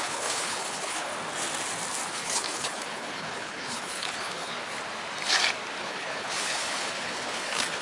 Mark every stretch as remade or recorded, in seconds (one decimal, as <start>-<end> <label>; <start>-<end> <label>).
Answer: 0.0-1.1 remade; 1.1-2.1 recorded; 2.1-4.6 remade; 4.6-5.8 recorded; 5.8-7.8 remade